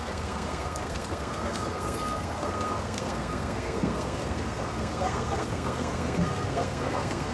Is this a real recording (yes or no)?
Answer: no